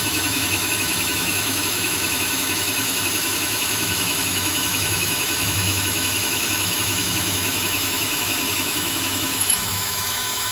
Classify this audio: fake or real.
fake